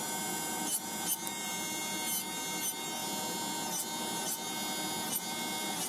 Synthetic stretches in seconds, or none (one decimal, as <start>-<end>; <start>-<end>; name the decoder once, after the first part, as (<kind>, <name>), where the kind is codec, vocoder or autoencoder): none